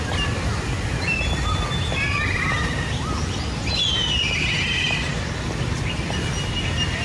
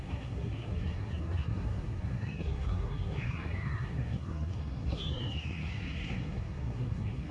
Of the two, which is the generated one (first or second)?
second